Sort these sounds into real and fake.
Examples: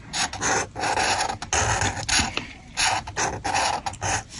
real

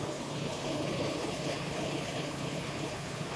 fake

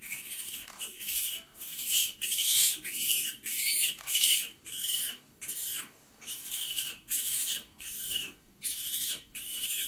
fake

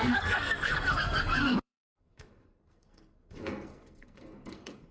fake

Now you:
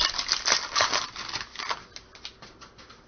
real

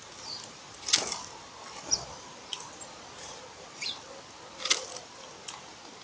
real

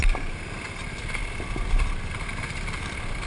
real